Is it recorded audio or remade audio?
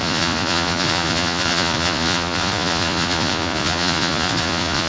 remade